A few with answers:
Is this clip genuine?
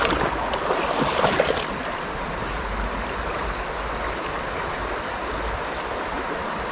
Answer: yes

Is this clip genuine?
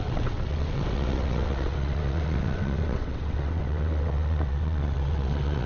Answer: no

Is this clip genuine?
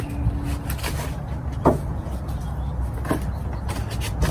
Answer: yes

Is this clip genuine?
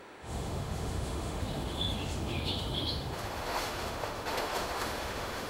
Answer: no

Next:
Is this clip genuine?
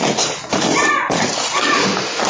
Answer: yes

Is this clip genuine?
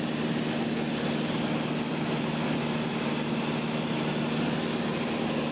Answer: yes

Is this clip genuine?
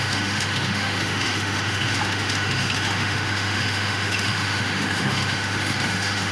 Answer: no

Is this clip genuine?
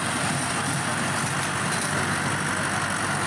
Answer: yes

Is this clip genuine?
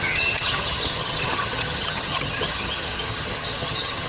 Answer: no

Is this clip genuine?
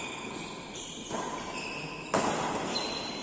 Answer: yes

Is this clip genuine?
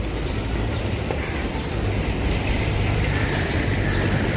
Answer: no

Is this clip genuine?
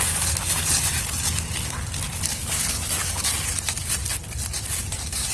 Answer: yes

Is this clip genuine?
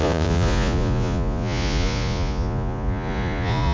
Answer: no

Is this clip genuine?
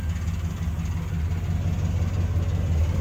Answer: yes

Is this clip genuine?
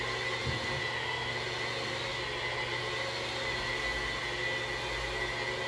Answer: yes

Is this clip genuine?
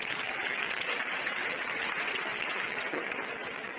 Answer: no